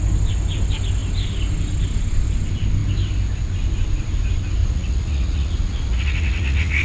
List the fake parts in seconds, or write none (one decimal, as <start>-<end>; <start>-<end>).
4.6-6.8